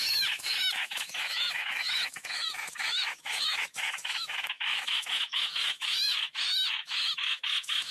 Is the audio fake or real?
fake